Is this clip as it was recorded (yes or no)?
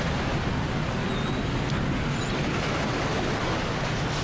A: yes